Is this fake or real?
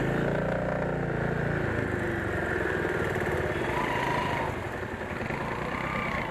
real